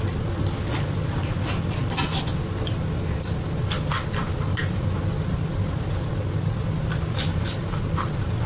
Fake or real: real